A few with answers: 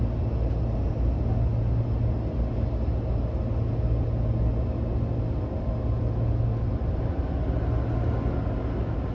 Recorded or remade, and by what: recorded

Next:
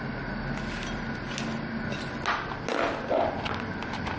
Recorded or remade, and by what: recorded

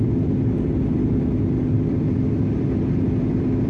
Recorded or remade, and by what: remade, vocoder, BigVGAN v2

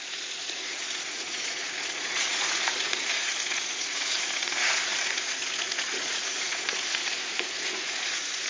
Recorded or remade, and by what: remade, vocoder, Vocos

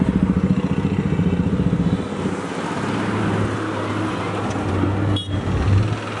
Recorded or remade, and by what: recorded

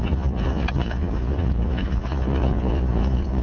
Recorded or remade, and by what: remade, vocoder, Vocos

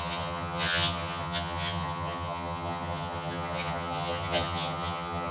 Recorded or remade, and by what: remade, vocoder, HiFi-GAN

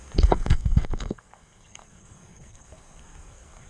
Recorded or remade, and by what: remade, codec, SNAC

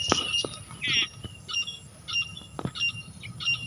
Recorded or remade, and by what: recorded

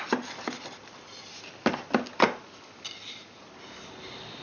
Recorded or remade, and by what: recorded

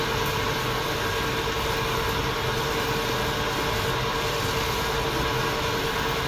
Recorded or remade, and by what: recorded